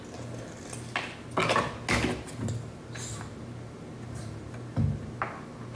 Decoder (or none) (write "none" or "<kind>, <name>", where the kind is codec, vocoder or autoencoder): none